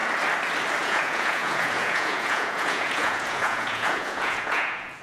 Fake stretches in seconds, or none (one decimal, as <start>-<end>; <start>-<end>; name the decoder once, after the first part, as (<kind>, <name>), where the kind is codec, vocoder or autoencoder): 0.8-5.0 (vocoder, Vocos)